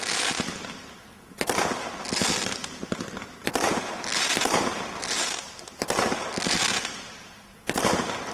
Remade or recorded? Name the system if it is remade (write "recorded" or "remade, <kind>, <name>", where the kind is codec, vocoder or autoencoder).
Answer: recorded